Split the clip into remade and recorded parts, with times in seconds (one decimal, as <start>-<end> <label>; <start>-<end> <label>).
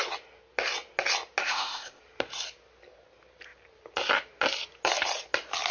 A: 0.0-1.4 recorded; 1.4-2.0 remade; 2.0-5.7 recorded